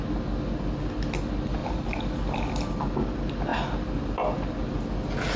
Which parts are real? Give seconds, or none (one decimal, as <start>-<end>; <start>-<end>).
0.0-1.6; 2.7-5.4